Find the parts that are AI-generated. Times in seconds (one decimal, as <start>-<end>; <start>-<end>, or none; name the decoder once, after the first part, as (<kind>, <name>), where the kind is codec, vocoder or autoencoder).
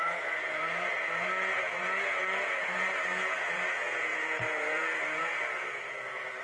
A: 0.0-6.4 (vocoder, Vocos)